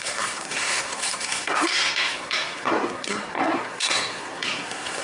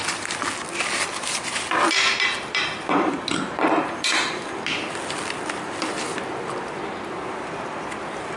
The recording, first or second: second